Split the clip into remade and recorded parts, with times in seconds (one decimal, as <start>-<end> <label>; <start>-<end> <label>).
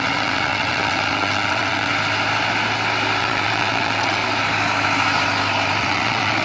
0.0-1.9 remade; 1.9-3.2 recorded; 3.2-4.2 remade; 4.2-5.8 recorded; 5.8-6.4 remade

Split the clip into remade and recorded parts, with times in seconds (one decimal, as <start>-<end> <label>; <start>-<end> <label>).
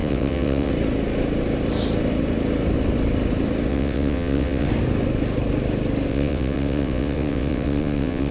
0.0-0.7 remade; 0.7-3.7 recorded; 3.7-4.7 remade; 4.7-6.1 recorded; 6.1-8.3 remade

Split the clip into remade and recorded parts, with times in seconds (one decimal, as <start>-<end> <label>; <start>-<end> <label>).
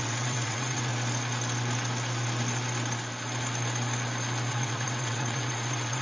0.0-0.9 remade; 0.9-4.5 recorded; 4.5-6.0 remade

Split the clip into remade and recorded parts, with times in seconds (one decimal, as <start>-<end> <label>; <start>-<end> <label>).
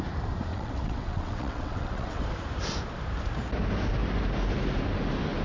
0.0-0.5 recorded; 0.5-2.2 remade; 2.2-5.4 recorded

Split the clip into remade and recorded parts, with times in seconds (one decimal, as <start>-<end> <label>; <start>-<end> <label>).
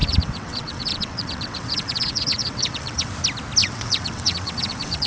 0.0-3.1 remade; 3.1-3.6 recorded; 3.6-5.1 remade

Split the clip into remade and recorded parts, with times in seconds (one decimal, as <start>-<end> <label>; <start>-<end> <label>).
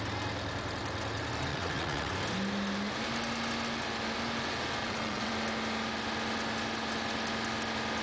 0.0-1.5 recorded; 1.5-2.1 remade; 2.1-4.8 recorded; 4.8-5.3 remade; 5.3-8.0 recorded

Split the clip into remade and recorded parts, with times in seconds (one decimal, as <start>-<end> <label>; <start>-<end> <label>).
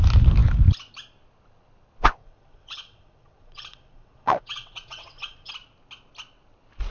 0.0-2.2 recorded; 2.2-5.5 remade; 5.5-6.9 recorded